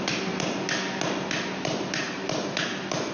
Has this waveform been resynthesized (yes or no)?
no